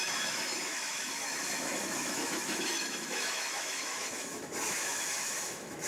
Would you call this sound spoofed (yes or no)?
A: yes